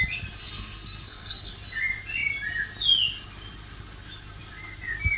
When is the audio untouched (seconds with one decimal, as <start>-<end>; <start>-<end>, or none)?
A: 0.0-0.4; 1.5-5.2